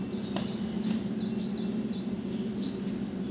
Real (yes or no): yes